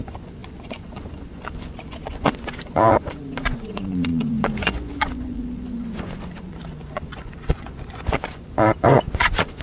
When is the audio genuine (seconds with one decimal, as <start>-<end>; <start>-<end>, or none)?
none